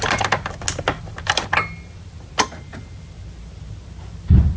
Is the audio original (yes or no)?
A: yes